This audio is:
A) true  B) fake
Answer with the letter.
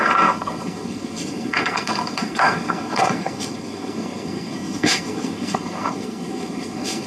B